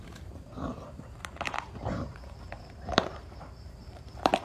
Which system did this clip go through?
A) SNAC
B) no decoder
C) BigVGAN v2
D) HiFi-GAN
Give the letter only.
C